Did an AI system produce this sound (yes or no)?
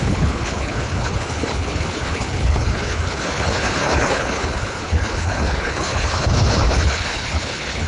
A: yes